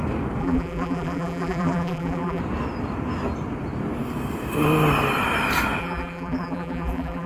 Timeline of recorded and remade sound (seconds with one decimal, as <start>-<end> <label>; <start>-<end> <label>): 0.0-0.4 recorded; 0.4-2.4 remade; 2.4-5.8 recorded; 5.8-7.3 remade